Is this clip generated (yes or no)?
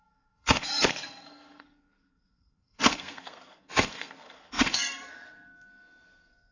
yes